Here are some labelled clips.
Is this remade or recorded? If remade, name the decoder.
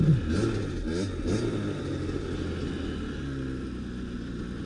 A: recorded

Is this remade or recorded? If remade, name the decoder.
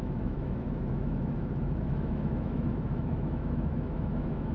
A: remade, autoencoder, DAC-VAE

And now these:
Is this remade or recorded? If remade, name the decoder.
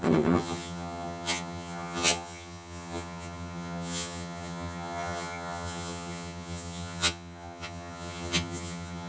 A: remade, vocoder, HiFi-GAN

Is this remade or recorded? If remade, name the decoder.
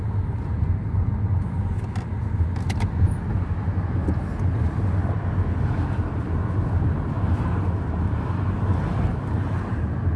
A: recorded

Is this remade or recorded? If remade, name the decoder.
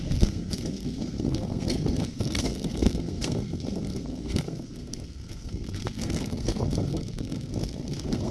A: remade, codec, SNAC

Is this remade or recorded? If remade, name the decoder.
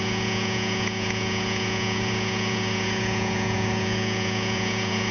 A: remade, vocoder, Vocos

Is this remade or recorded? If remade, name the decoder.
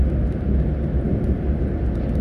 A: recorded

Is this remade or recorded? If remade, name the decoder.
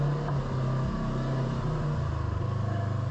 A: recorded